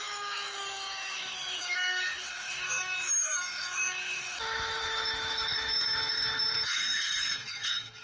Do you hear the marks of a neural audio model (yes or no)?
yes